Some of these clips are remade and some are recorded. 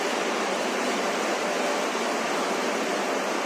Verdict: remade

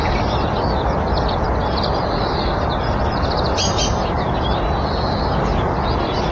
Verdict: recorded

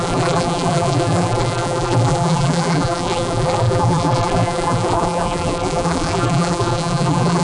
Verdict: remade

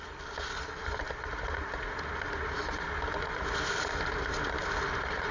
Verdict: remade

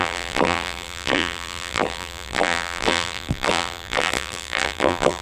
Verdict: remade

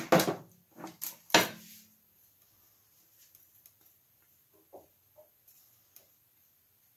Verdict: recorded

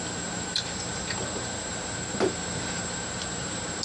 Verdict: remade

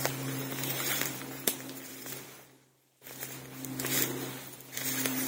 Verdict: remade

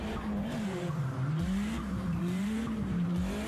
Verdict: remade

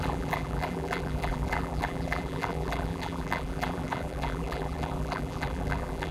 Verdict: remade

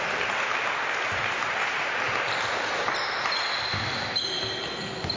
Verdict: recorded